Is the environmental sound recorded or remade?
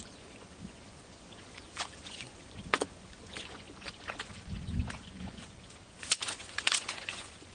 remade